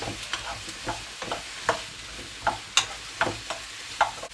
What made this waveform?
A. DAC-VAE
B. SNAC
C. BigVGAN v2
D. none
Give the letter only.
D